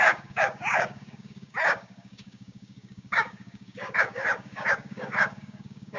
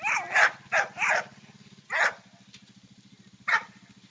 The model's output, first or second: first